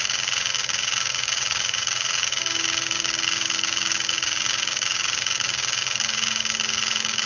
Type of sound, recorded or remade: remade